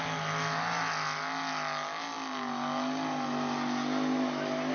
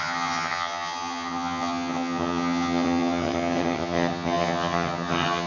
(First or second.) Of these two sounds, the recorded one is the first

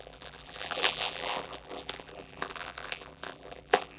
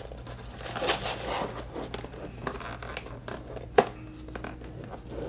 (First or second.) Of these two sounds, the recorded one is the second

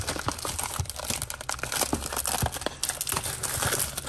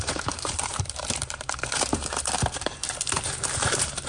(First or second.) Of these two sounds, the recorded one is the first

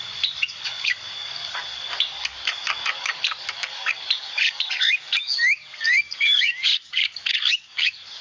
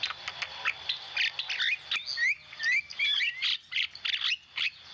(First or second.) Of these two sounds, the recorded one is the second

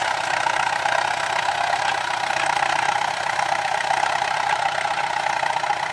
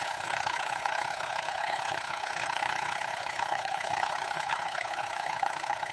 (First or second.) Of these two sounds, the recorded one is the first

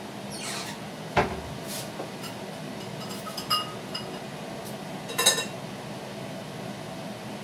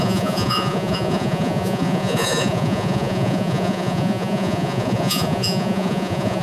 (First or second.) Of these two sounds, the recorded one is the first